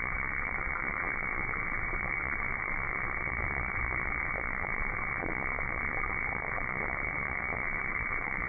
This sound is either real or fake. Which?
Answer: fake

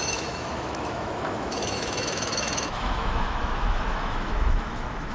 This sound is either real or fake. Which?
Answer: fake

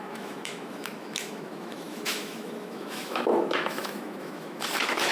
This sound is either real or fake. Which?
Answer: fake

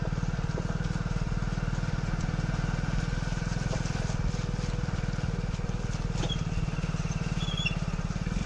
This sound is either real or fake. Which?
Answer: real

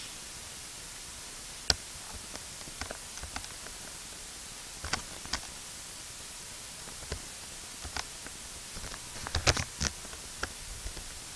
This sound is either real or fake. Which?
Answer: real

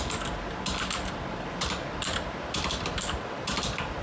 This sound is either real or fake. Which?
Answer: real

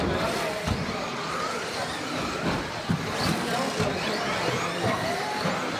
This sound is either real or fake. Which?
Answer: fake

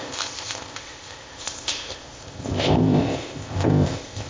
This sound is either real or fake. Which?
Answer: fake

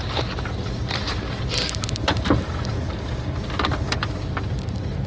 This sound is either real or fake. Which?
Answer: fake